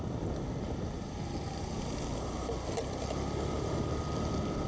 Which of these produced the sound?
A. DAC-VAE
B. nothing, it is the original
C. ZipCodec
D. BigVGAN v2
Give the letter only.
B